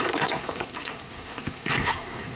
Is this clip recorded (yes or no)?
no